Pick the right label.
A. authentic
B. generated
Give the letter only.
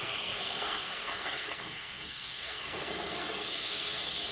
B